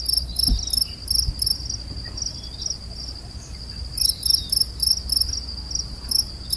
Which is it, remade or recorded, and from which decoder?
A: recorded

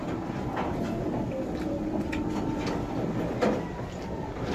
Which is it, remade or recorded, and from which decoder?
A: recorded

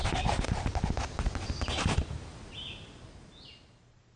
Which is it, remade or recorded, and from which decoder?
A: recorded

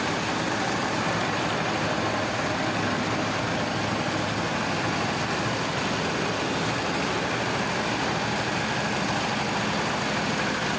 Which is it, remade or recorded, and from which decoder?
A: recorded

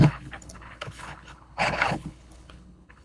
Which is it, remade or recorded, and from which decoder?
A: remade, codec, HILCodec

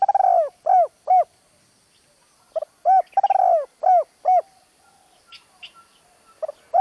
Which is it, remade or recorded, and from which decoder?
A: recorded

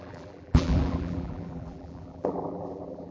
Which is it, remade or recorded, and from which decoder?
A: remade, vocoder, BigVGAN v2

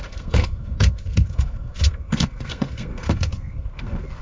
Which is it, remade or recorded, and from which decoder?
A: remade, codec, SNAC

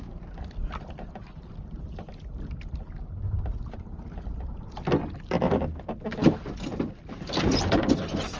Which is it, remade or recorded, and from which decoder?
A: recorded